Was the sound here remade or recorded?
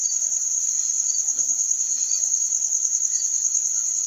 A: recorded